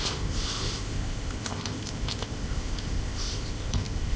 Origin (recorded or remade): remade